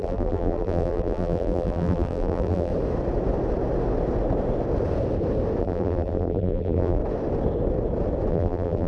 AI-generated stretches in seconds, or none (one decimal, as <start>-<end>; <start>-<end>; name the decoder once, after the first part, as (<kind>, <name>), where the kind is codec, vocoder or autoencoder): 0.0-2.7 (vocoder, BigVGAN v2); 5.6-7.0; 8.3-8.9